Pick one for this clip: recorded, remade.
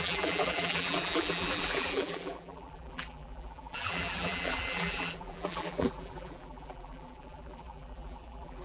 remade